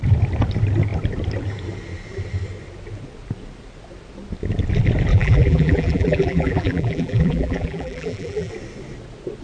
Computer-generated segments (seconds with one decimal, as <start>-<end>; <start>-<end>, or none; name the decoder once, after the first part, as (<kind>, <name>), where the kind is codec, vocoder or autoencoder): 5.1-8.5 (vocoder, BigVGAN v2)